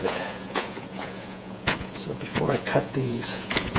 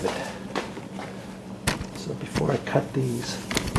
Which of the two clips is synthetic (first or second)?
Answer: first